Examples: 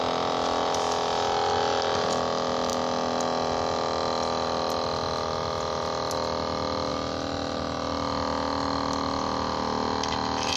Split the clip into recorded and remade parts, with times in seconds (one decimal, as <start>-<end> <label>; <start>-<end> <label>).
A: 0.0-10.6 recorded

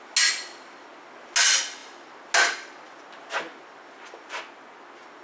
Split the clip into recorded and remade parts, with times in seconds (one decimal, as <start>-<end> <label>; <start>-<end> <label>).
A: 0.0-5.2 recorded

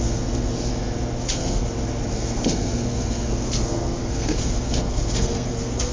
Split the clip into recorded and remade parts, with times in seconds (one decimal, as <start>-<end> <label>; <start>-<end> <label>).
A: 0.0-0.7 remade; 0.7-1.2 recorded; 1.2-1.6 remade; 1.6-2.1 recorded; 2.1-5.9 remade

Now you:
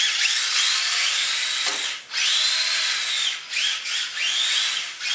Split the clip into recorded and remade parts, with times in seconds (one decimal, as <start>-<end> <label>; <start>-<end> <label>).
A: 0.0-5.1 recorded

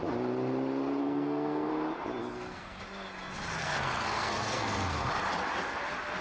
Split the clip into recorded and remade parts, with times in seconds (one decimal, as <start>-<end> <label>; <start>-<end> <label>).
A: 0.0-1.0 recorded; 1.0-1.7 remade; 1.7-2.2 recorded; 2.2-2.8 remade; 2.8-3.6 recorded; 3.6-5.1 remade; 5.1-6.2 recorded